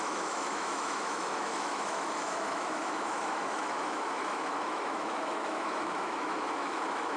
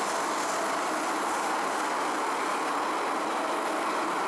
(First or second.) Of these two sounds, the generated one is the first